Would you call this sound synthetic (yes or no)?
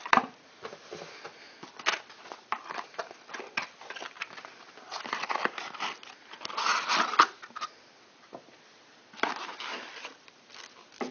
yes